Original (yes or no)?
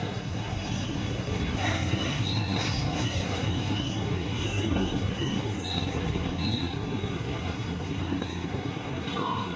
no